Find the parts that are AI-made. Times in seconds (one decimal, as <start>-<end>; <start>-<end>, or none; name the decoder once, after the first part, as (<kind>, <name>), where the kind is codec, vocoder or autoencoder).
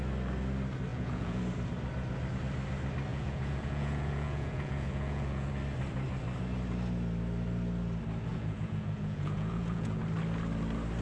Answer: 0.9-1.4 (vocoder, Vocos); 3.1-5.5; 8.3-10.0